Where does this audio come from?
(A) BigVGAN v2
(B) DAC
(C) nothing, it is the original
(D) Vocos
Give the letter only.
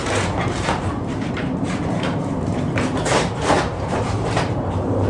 A